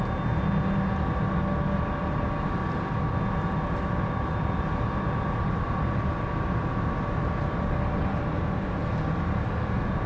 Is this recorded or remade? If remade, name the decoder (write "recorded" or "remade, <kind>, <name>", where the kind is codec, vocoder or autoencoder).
recorded